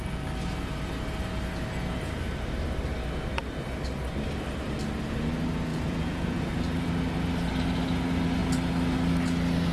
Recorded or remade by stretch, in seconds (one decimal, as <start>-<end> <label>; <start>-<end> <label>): 0.0-5.7 recorded; 5.7-6.5 remade; 6.5-9.7 recorded